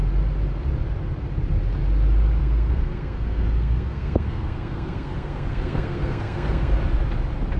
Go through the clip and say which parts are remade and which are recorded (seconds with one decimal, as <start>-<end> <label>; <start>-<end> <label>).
0.0-2.4 recorded; 2.4-6.7 remade; 6.7-7.6 recorded